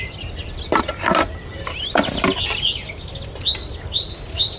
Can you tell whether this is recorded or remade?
recorded